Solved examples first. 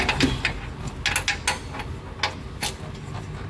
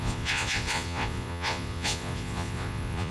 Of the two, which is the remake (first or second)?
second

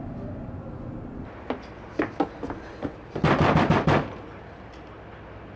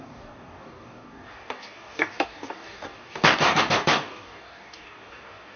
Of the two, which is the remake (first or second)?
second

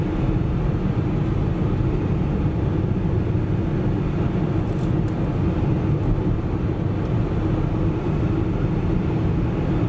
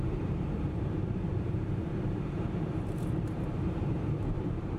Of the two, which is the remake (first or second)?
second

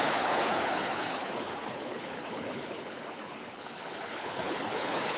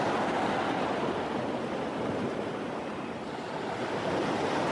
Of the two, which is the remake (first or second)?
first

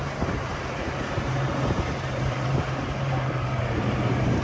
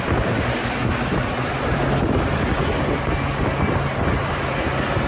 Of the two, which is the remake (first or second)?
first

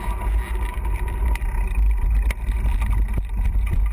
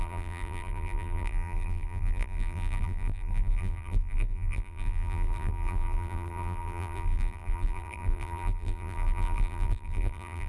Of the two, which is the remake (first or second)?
second